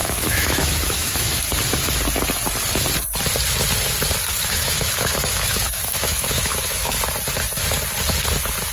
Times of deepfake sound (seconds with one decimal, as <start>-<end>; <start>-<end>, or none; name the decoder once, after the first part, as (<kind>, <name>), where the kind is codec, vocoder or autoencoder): 0.0-1.4 (autoencoder, DAC-VAE); 4.3-7.0